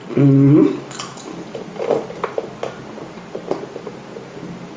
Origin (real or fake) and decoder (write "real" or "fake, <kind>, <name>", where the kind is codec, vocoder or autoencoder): real